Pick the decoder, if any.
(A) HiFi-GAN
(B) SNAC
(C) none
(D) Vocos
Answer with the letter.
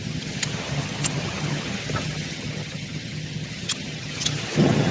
A